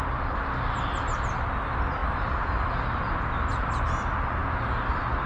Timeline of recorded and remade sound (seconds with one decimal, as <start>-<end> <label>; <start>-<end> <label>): 0.0-5.3 recorded